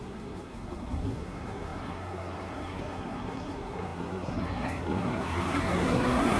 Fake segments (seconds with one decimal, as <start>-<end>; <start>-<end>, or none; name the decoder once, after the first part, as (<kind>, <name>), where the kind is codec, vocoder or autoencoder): 0.0-6.4 (codec, SNAC)